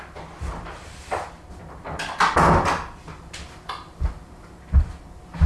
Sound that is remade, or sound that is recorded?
recorded